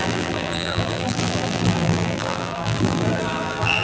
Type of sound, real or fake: fake